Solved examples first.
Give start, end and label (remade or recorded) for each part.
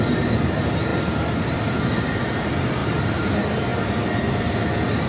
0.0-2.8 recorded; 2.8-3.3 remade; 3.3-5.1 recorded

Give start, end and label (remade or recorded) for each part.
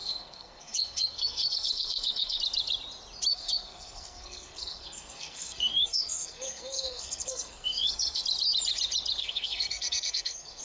0.0-2.4 remade; 2.4-3.3 recorded; 3.3-8.2 remade; 8.2-9.2 recorded; 9.2-10.6 remade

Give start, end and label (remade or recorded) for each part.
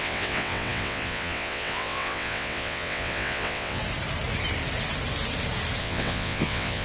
0.0-3.8 remade; 3.8-5.8 recorded; 5.8-6.8 remade